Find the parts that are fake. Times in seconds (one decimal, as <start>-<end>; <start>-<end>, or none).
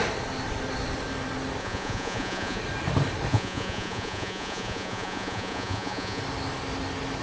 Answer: 1.6-2.6; 3.3-6.2